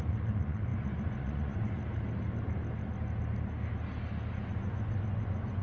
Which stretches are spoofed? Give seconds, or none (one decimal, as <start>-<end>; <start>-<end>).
0.0-1.8; 4.5-5.6